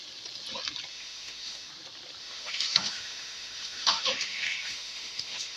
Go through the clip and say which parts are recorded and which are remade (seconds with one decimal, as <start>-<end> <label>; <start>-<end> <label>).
0.0-0.9 recorded; 0.9-1.7 remade; 1.7-2.2 recorded; 2.2-5.6 remade